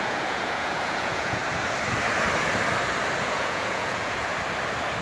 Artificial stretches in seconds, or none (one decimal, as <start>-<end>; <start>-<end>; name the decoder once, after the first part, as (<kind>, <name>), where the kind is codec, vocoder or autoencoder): 0.0-1.4 (vocoder, Vocos); 3.2-4.3